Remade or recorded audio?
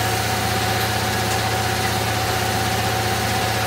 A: recorded